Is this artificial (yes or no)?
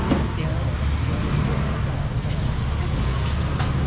no